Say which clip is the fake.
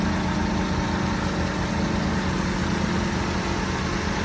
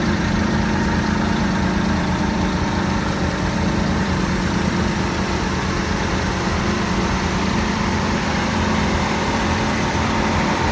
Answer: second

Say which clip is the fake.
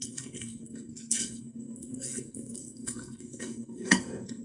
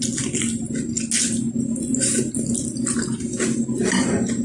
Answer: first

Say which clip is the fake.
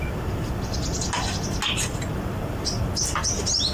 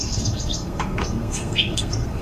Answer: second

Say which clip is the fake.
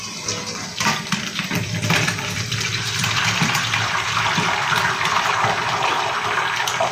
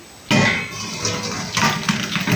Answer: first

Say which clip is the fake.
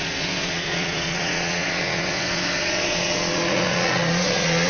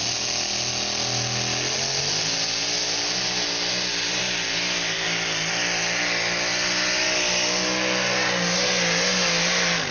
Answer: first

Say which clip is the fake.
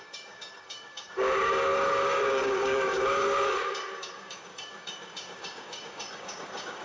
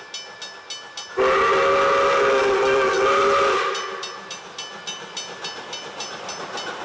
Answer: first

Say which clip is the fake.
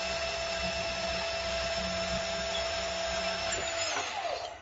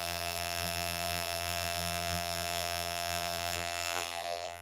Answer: second